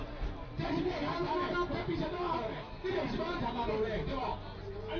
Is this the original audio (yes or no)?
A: yes